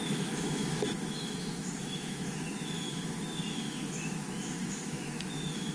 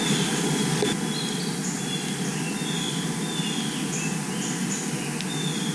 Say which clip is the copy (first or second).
first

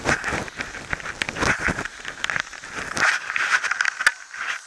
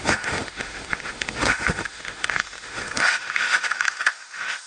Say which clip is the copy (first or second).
second